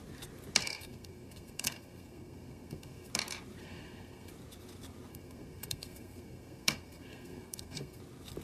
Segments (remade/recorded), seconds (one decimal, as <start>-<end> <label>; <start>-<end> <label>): 0.0-0.6 recorded; 0.6-3.1 remade; 3.1-3.6 recorded; 3.6-4.3 remade; 4.3-5.1 recorded; 5.1-8.0 remade; 8.0-8.4 recorded